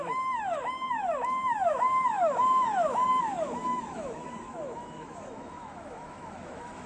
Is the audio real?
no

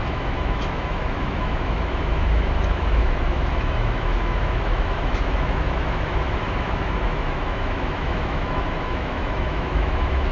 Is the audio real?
no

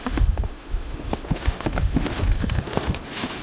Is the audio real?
no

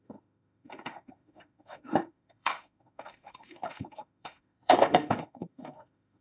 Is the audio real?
no